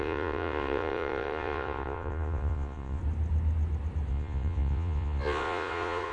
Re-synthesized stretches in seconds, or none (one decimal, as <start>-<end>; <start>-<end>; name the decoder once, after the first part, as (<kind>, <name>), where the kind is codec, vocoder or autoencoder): 0.0-3.0 (vocoder, Vocos); 4.1-6.1

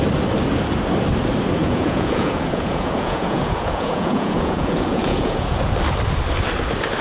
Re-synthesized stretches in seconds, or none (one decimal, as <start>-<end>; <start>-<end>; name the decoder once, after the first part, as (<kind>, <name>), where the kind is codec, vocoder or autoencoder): 1.6-5.7 (vocoder, Vocos)

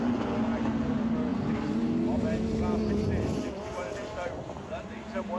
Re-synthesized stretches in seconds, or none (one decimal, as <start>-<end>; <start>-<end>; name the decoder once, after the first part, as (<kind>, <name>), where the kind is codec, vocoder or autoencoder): 3.7-5.4 (vocoder, BigVGAN v2)

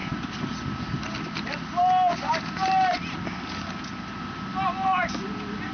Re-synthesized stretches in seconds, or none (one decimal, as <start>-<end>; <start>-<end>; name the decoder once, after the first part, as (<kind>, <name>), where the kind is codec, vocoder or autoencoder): none

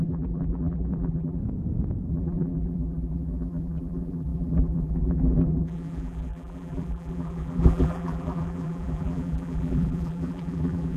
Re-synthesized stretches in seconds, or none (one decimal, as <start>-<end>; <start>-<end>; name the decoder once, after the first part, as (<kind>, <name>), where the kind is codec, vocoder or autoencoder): 0.0-1.4 (vocoder, BigVGAN v2); 2.1-11.0

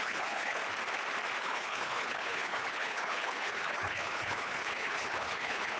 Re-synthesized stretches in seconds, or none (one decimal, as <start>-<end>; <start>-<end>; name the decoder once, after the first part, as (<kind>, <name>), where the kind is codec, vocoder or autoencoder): 0.0-0.6 (codec, HILCodec); 1.4-5.8

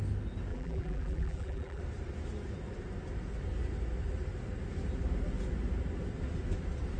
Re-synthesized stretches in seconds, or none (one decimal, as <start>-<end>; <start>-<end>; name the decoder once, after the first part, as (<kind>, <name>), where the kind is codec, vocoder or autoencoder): 0.5-1.8 (vocoder, BigVGAN v2)